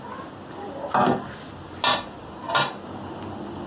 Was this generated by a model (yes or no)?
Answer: no